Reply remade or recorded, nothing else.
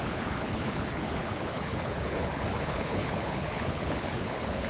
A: remade